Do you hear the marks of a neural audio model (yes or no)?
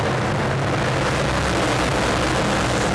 no